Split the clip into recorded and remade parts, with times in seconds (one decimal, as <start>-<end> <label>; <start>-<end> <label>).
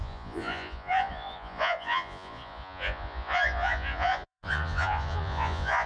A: 0.0-5.9 remade